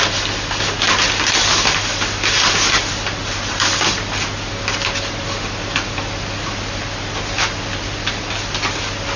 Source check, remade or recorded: recorded